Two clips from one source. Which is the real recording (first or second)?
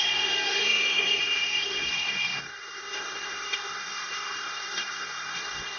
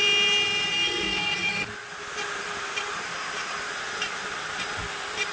second